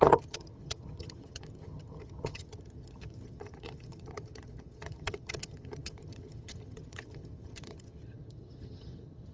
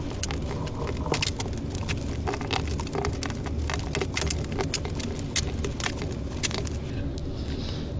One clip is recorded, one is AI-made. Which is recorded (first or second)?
second